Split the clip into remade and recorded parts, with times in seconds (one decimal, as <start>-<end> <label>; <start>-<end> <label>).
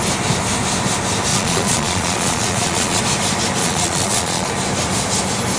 0.0-1.3 recorded; 1.3-3.0 remade; 3.0-3.6 recorded; 3.6-4.5 remade; 4.5-5.6 recorded